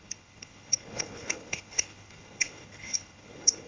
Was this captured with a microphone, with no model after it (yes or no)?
no